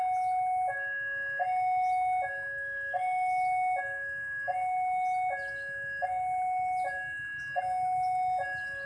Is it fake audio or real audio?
real